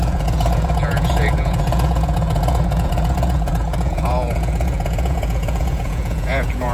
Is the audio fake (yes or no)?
yes